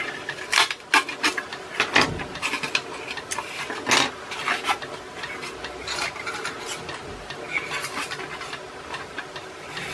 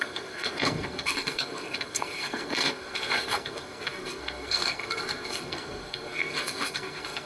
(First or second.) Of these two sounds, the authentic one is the first